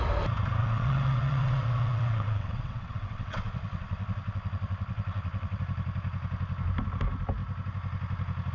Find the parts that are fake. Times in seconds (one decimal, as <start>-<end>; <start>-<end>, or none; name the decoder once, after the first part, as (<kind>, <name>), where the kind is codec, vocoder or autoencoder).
0.6-5.6 (vocoder, WaveNeXt)